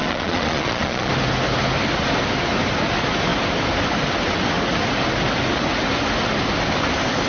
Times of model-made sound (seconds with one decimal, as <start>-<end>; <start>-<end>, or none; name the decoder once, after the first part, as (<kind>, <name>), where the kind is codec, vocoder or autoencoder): 0.0-1.1 (vocoder, Vocos)